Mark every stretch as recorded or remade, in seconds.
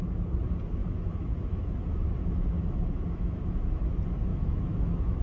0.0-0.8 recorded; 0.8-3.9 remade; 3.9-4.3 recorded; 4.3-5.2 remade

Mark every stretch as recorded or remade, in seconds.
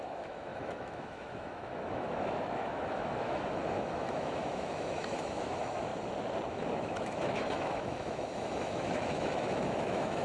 0.0-5.9 remade; 5.9-6.5 recorded; 6.5-10.2 remade